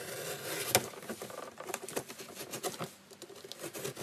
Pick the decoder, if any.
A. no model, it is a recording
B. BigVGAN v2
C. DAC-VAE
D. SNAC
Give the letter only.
A